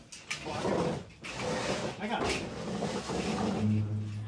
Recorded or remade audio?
recorded